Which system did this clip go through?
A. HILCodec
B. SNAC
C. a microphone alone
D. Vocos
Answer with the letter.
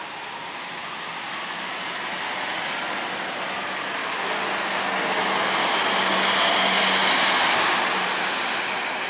C